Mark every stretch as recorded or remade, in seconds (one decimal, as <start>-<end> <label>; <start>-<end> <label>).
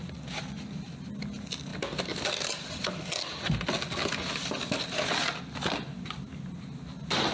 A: 0.0-7.3 recorded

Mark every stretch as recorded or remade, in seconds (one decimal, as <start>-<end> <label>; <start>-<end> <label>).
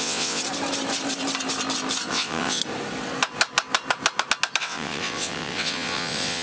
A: 0.0-0.4 remade; 0.4-2.1 recorded; 2.1-2.6 remade; 2.6-4.6 recorded; 4.6-6.4 remade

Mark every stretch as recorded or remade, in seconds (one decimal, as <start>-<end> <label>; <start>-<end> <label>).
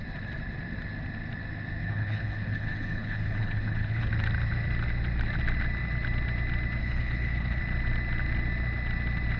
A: 0.0-1.8 recorded; 1.8-4.1 remade; 4.1-6.8 recorded; 6.8-7.6 remade; 7.6-9.4 recorded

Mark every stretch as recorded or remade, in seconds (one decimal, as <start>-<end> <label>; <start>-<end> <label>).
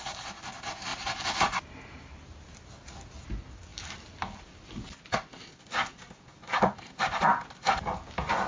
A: 0.0-8.5 recorded